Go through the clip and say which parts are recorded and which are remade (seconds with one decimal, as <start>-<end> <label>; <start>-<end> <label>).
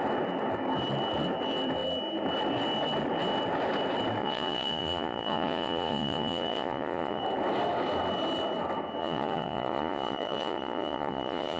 0.0-4.2 recorded; 4.2-7.2 remade; 7.2-9.0 recorded; 9.0-11.6 remade